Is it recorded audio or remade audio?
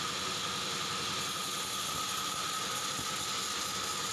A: recorded